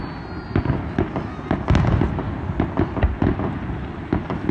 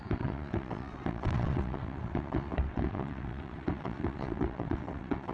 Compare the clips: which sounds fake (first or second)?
second